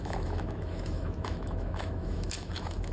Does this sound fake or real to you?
fake